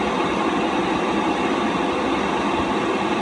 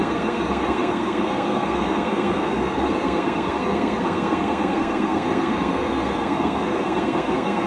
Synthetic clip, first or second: second